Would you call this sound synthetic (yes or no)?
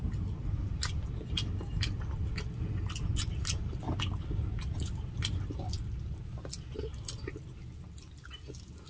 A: no